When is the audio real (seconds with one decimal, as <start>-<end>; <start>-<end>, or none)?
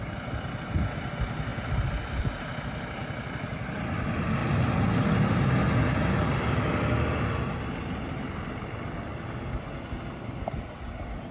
0.0-11.3